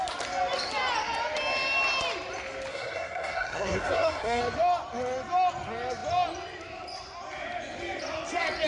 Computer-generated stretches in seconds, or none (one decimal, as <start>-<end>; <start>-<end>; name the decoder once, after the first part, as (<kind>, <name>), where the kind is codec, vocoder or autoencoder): 2.7-4.4 (codec, SNAC)